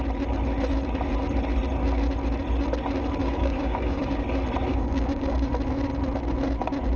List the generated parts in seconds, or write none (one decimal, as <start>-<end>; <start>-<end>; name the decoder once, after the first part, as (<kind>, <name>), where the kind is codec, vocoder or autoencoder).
3.2-4.2 (codec, DAC); 4.7-5.5